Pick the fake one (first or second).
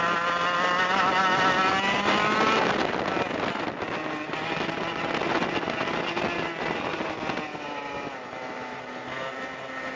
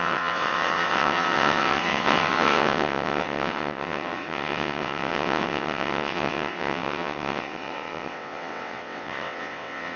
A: second